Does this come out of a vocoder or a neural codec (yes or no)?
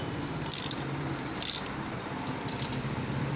yes